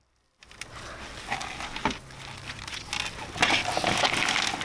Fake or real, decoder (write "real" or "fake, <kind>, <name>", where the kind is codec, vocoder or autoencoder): real